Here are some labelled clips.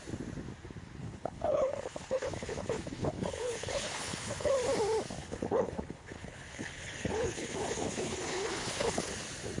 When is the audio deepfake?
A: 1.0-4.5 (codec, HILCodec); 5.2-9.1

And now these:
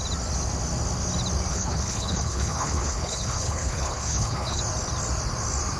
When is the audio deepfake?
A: 1.5-4.6 (codec, HILCodec)

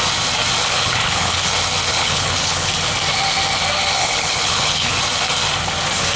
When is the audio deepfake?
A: 0.6-1.5 (codec, HILCodec); 1.9-2.7; 4.0-4.9

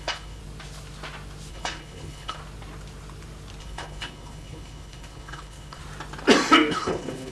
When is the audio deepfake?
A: 0.0-0.4 (codec, HILCodec); 1.5-2.4; 3.6-5.8; 6.7-7.3

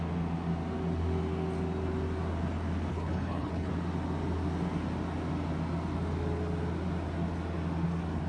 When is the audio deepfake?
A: 2.9-3.7 (codec, HILCodec)

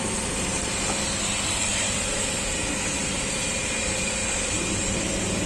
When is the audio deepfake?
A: none

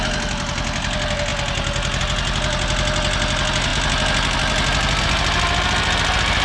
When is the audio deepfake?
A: none